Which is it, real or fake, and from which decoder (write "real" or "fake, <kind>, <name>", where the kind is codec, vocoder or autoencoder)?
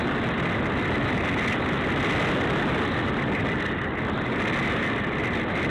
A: real